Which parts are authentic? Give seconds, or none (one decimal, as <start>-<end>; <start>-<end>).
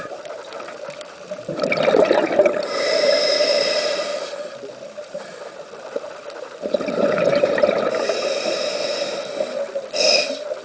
4.1-4.7; 8.7-10.6